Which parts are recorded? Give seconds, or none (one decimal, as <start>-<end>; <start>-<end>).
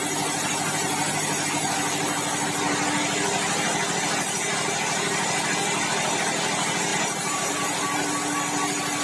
0.0-6.9; 7.5-9.0